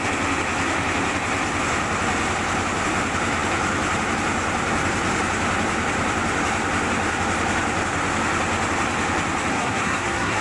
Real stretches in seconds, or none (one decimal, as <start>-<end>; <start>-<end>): 0.0-9.5